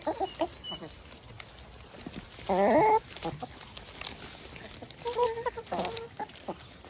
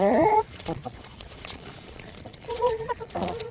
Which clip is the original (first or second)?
first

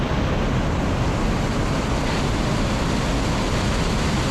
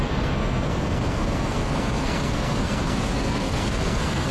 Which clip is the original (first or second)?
first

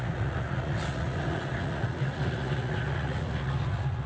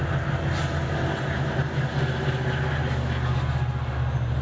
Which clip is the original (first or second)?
second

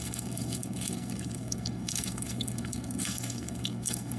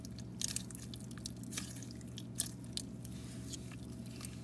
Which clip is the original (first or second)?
second